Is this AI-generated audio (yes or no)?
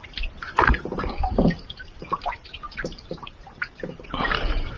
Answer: yes